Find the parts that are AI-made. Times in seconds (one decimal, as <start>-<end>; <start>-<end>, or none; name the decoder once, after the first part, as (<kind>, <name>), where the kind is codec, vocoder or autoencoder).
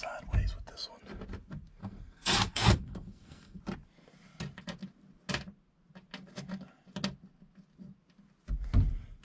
1.8-3.6 (codec, SNAC)